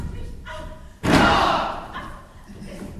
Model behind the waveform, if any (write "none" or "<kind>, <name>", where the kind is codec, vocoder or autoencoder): vocoder, BigVGAN v2